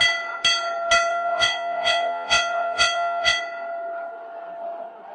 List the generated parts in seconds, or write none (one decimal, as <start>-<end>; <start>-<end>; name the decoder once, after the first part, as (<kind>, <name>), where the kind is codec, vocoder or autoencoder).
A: 1.1-3.4 (vocoder, Vocos)